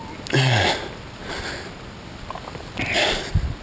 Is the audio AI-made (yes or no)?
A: no